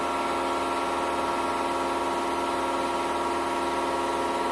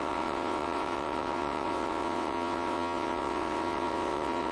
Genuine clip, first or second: first